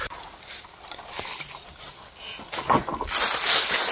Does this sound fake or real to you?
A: real